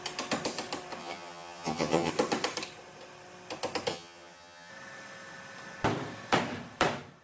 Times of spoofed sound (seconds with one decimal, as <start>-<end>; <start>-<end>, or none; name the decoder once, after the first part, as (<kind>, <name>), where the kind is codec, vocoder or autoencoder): 1.0-2.1 (vocoder, HiFi-GAN); 3.9-4.7